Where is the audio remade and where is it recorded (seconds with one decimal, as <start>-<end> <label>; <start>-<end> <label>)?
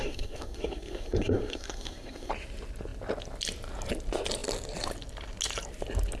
0.0-2.3 remade; 2.3-6.2 recorded